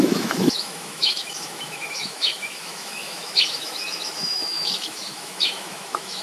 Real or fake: fake